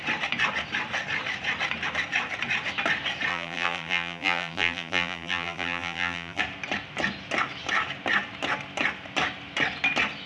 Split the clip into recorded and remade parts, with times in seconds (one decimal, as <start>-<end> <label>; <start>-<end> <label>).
0.0-3.3 recorded; 3.3-6.4 remade; 6.4-10.3 recorded